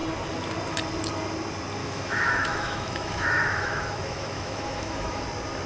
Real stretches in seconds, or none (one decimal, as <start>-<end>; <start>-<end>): 0.0-1.8; 5.2-5.7